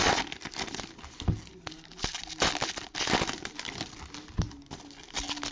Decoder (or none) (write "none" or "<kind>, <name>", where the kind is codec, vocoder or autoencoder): none